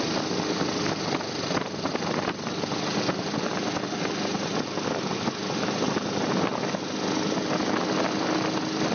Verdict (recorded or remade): recorded